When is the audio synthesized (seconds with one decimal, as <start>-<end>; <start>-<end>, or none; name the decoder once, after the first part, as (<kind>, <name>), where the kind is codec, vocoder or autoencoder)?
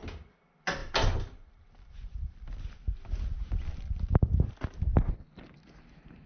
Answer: none